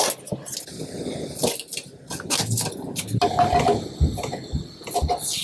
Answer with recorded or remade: recorded